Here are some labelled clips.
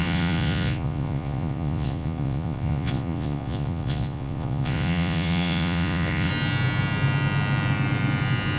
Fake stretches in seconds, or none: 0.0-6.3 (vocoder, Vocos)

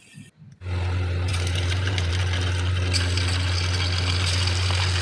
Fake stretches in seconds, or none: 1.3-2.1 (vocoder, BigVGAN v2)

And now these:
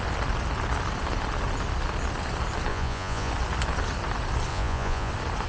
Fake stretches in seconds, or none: 2.7-3.3 (vocoder, Vocos); 4.5-5.1